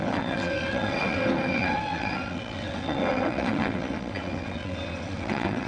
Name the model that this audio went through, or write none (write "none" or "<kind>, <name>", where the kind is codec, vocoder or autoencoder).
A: vocoder, WaveNeXt